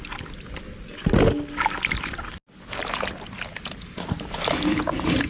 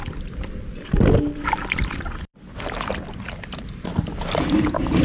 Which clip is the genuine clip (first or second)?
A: first